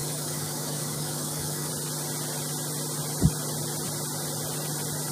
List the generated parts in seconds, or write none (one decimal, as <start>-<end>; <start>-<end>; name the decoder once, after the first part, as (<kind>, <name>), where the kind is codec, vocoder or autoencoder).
0.0-1.7 (codec, DAC)